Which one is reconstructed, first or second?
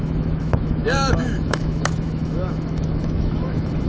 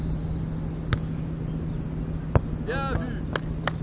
first